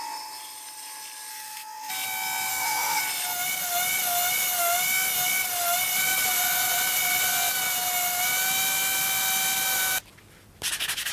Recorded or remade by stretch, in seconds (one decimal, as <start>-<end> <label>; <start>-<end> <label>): 0.0-1.3 recorded; 1.3-1.9 remade; 1.9-2.5 recorded; 2.5-3.0 remade; 3.0-11.1 recorded